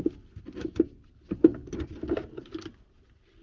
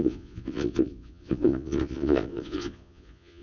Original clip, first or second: first